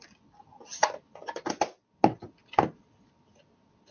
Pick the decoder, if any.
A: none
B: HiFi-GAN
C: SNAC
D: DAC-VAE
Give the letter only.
A